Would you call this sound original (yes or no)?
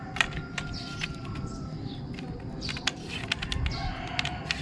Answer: yes